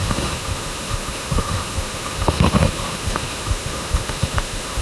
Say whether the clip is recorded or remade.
remade